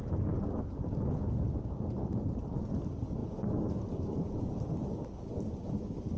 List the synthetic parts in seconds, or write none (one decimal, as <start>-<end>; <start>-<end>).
none